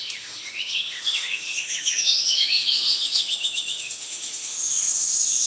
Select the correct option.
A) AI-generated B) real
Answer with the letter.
A